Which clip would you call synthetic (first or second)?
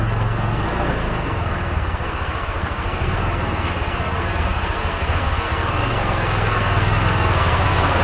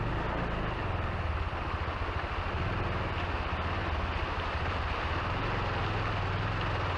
first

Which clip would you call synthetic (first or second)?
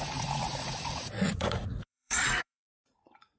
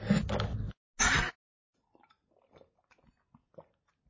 first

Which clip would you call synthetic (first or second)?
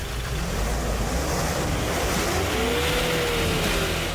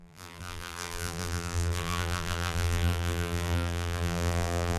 second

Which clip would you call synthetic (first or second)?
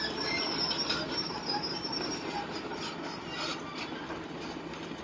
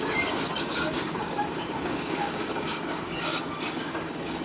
second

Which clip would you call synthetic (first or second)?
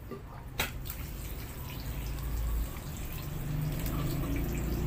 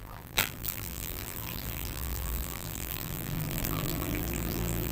second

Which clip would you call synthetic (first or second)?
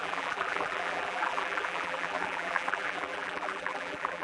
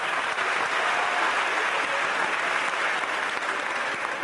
first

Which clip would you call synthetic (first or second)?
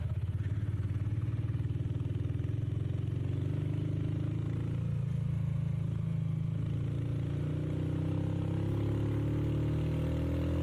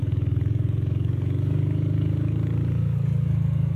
second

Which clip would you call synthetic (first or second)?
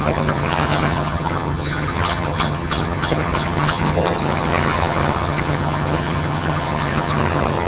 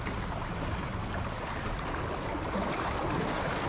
first